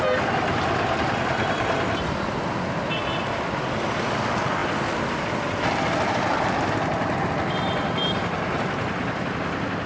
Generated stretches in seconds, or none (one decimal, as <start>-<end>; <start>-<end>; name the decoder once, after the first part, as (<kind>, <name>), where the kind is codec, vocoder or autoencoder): none